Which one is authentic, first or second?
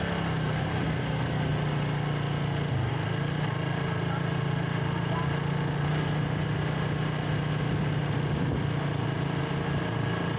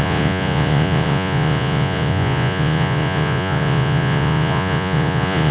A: first